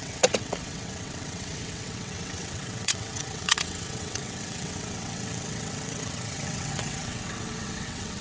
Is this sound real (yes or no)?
no